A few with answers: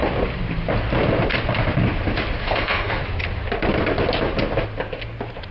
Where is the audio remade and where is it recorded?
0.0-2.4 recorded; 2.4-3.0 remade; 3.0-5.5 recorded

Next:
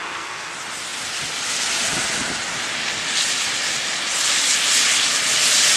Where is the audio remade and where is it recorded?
0.0-0.5 remade; 0.5-5.8 recorded

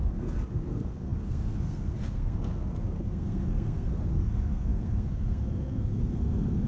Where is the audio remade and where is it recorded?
0.0-6.7 remade

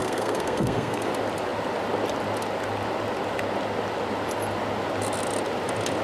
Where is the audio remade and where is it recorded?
0.0-1.1 remade; 1.1-6.0 recorded

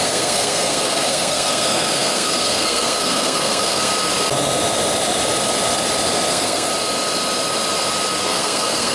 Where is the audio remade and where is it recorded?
0.0-3.9 remade; 3.9-6.3 recorded; 6.3-6.7 remade; 6.7-8.2 recorded; 8.2-8.9 remade